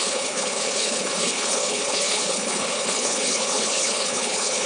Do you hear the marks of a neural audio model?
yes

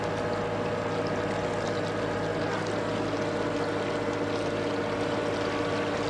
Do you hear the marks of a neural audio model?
no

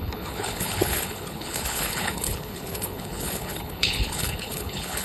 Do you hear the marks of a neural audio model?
yes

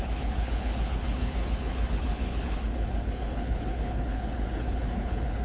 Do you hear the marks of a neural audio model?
yes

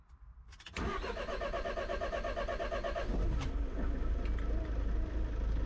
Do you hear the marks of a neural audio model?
no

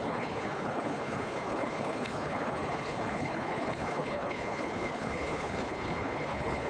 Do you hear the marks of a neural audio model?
yes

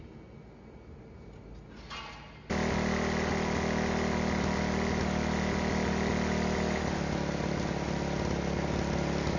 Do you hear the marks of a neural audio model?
no